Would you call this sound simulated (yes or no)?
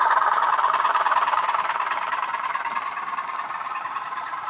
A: yes